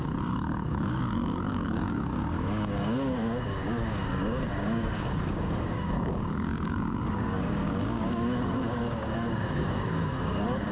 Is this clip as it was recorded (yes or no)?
no